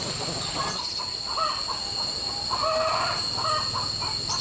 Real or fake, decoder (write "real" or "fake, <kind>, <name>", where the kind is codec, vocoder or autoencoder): real